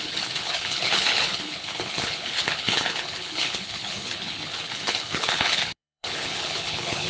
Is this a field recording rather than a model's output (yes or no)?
no